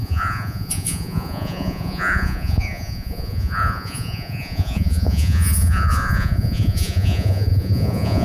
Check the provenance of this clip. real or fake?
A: fake